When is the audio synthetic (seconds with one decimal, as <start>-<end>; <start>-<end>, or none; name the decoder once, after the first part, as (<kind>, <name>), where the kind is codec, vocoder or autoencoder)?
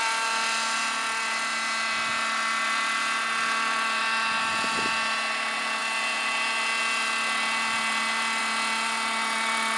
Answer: none